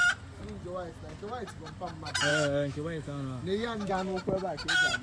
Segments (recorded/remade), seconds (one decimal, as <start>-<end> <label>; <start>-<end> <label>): 0.0-2.3 recorded; 2.3-3.9 remade; 3.9-5.0 recorded